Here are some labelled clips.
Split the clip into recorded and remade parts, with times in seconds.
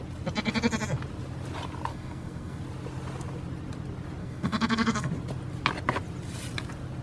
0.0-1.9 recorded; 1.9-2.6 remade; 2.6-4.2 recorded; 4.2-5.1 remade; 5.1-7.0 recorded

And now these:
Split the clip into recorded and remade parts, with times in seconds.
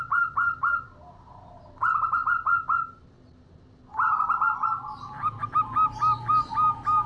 0.0-7.1 recorded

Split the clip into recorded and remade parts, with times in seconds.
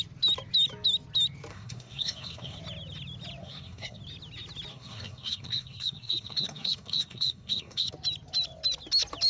0.0-1.5 recorded; 1.5-2.6 remade; 2.6-3.4 recorded; 3.4-4.0 remade; 4.0-4.7 recorded; 4.7-7.9 remade; 7.9-9.3 recorded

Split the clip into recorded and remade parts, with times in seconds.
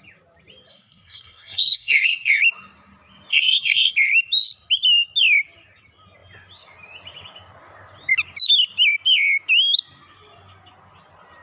0.0-0.7 recorded; 0.7-2.4 remade; 2.4-3.3 recorded; 3.3-3.9 remade; 3.9-11.4 recorded